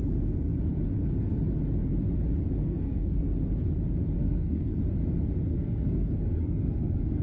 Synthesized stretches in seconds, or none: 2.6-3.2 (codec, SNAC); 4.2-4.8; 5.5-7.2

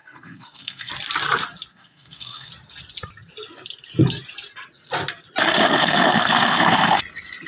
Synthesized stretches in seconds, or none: 0.0-0.9 (codec, SNAC); 1.7-2.5; 5.6-7.0

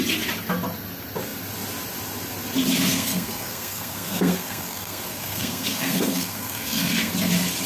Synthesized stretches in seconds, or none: 2.9-7.1 (codec, SNAC)

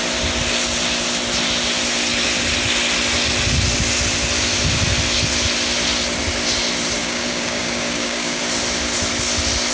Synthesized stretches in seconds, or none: 7.0-8.4 (codec, DAC)

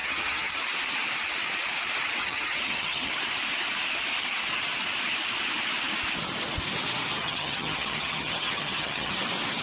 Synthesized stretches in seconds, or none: 0.0-0.6 (vocoder, HiFi-GAN); 2.2-3.1; 7.2-9.1

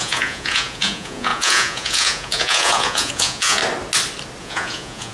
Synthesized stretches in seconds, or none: 0.0-3.6 (vocoder, Vocos); 4.4-5.1

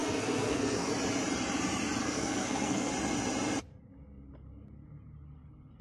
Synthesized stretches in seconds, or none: 0.0-0.9 (codec, SNAC); 2.0-2.9